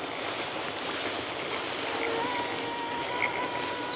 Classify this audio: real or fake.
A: real